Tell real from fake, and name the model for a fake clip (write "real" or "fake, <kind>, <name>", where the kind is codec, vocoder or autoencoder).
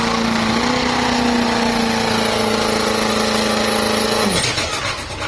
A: real